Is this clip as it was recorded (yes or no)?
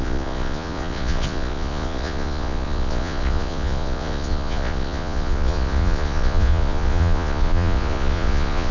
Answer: no